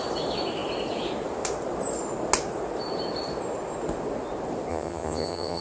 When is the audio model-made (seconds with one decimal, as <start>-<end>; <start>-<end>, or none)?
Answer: 4.7-5.6